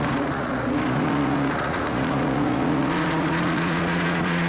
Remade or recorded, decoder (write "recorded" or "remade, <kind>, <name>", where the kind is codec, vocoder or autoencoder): remade, vocoder, Vocos